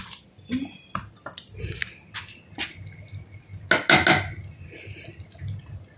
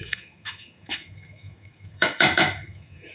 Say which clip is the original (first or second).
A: first